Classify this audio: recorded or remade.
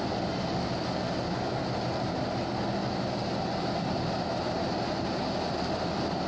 recorded